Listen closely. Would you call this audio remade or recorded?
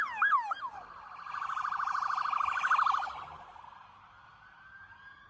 recorded